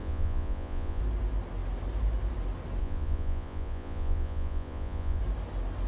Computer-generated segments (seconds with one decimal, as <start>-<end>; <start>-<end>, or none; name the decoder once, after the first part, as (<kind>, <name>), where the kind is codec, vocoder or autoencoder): 0.0-1.0 (vocoder, Vocos); 2.8-5.2